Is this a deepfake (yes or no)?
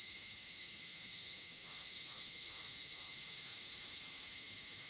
yes